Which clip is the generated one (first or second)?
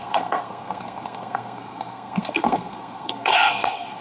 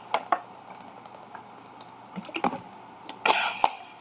first